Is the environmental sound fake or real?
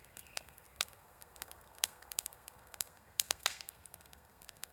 fake